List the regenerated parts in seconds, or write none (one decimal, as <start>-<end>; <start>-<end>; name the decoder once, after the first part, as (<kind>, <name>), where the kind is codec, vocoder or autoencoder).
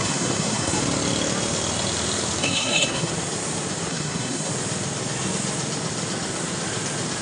0.0-0.8 (codec, SNAC); 2.4-3.1; 3.9-4.5